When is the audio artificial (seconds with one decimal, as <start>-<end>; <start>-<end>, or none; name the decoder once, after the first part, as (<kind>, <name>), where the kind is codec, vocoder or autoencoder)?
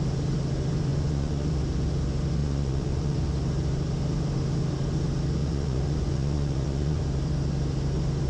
0.9-1.5 (vocoder, Vocos); 2.4-3.3; 5.4-7.0